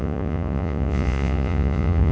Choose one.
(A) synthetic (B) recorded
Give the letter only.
A